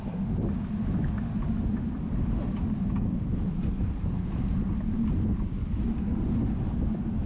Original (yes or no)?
yes